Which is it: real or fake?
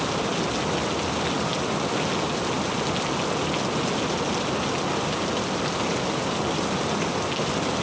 real